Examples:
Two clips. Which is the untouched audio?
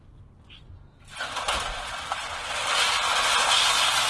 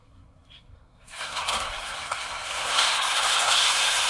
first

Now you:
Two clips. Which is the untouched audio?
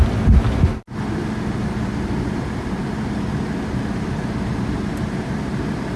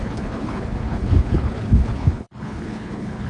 first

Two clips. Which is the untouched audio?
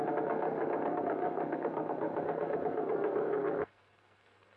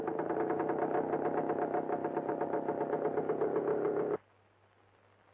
second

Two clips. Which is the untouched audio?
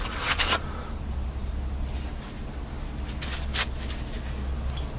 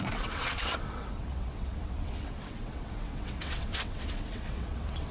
first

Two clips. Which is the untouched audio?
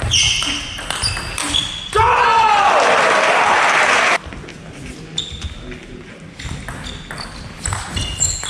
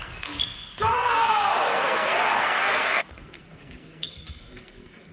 first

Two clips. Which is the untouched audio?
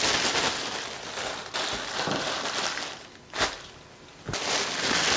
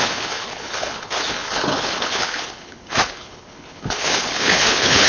first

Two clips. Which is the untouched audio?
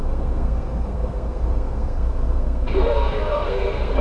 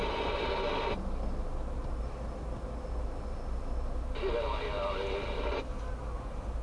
second